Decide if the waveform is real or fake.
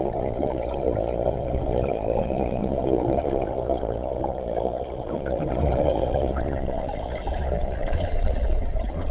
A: fake